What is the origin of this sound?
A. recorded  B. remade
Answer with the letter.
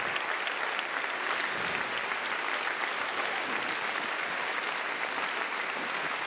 A